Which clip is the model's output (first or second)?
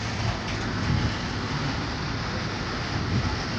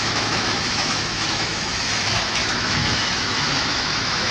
second